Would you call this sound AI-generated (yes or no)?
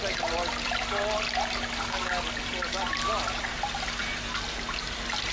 no